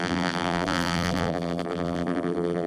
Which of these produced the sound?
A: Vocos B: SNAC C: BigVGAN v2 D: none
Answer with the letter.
C